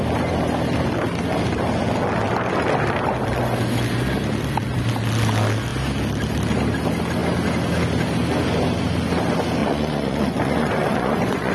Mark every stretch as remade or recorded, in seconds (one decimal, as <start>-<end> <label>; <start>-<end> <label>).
0.0-9.6 recorded; 9.6-11.5 remade